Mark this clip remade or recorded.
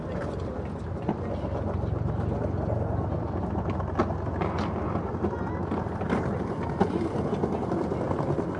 recorded